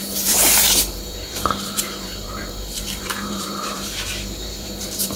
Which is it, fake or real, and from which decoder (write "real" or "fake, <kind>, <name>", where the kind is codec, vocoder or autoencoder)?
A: fake, vocoder, BigVGAN v2